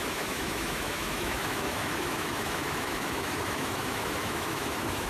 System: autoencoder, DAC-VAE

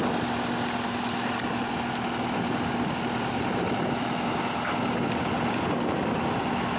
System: none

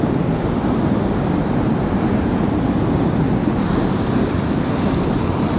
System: none